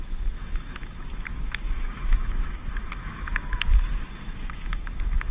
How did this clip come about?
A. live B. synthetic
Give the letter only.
B